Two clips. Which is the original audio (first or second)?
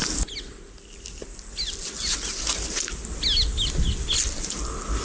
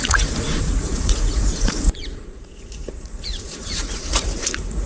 first